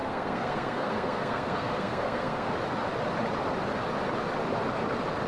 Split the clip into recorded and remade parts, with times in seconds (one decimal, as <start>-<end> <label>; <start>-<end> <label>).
0.0-2.5 remade; 2.5-5.3 recorded